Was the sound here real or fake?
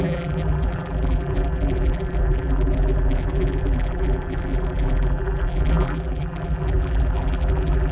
fake